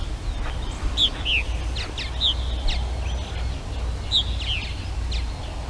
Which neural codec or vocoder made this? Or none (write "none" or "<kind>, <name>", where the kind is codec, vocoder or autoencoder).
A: none